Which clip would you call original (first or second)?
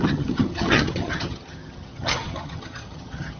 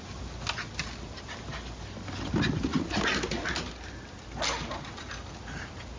second